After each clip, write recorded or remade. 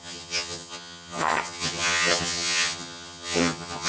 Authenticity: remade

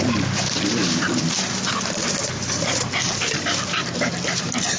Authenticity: remade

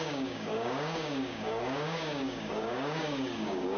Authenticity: remade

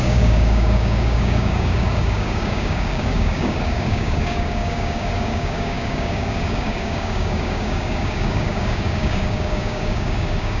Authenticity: remade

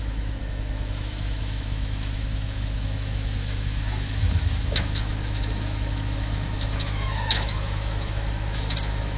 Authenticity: remade